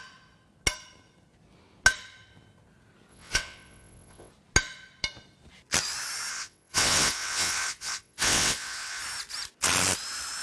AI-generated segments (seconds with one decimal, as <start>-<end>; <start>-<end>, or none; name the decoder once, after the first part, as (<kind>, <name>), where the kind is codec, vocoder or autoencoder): 3.1-4.3 (vocoder, WaveNeXt); 6.3-9.0

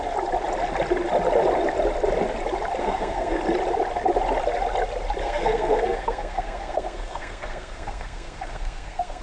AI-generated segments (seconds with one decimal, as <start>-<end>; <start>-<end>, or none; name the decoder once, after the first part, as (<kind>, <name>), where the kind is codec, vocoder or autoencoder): 2.8-3.4 (codec, SNAC); 5.2-9.2